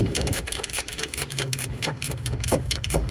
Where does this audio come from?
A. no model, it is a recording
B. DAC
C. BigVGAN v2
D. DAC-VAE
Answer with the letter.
D